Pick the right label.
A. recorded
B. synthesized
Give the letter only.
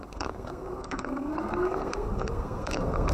B